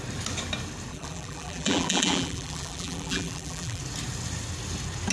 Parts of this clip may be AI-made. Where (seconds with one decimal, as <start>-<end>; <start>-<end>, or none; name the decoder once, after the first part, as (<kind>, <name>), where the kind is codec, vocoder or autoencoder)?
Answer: 0.9-3.8 (vocoder, BigVGAN v2)

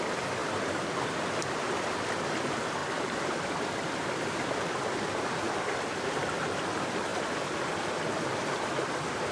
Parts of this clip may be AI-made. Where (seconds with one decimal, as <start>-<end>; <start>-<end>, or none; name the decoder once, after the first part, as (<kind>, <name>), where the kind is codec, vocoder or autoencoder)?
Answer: 0.4-1.2 (vocoder, BigVGAN v2); 2.8-5.1

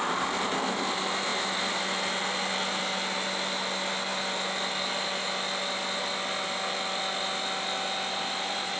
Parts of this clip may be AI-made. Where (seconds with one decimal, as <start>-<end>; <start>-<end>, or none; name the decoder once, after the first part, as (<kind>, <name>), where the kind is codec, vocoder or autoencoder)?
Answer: none